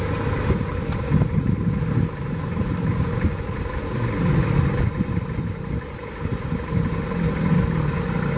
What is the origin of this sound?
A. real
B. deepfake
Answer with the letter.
A